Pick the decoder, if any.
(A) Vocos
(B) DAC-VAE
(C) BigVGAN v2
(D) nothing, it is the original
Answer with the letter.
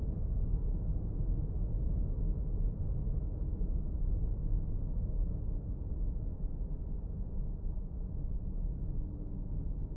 B